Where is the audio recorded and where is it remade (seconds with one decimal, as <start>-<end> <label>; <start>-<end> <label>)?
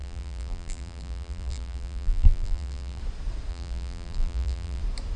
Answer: 0.0-3.0 remade; 3.0-3.5 recorded; 3.5-4.8 remade; 4.8-5.2 recorded